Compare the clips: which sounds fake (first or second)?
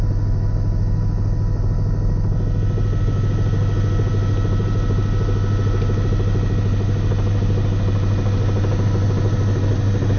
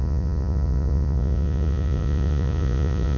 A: second